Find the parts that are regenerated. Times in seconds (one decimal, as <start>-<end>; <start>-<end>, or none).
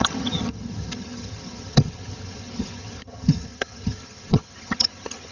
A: 0.0-5.3